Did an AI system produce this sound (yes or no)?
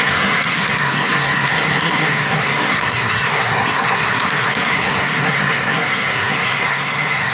yes